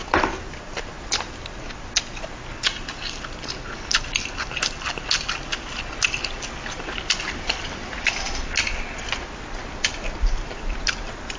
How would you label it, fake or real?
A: real